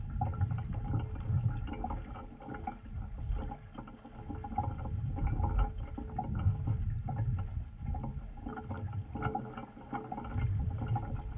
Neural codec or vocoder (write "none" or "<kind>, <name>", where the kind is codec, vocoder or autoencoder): none